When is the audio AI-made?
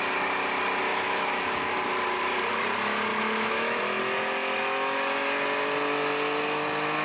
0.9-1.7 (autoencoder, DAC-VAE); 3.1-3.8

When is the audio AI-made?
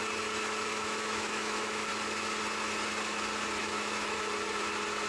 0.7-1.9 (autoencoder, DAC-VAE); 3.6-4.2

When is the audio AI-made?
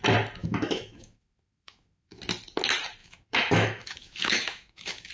0.4-2.2 (autoencoder, DAC-VAE); 3.0-5.1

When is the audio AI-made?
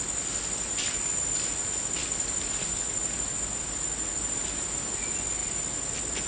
none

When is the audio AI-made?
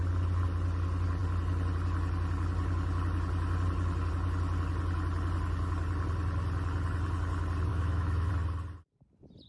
7.7-8.3 (autoencoder, DAC-VAE)